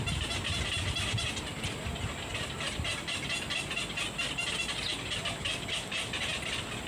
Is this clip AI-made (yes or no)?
no